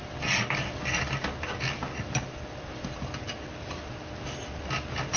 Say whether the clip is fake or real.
real